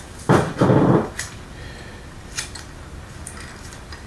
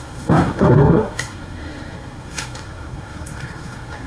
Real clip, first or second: first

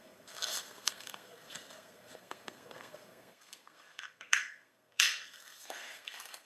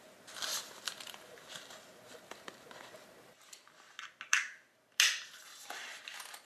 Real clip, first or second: second